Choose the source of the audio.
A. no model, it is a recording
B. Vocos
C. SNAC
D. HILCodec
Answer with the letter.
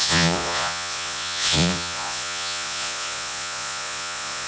B